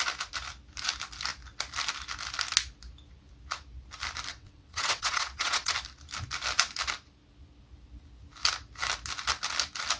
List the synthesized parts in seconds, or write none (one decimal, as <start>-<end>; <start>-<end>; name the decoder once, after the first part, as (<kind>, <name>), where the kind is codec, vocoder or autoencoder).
4.3-5.7 (vocoder, WaveNeXt)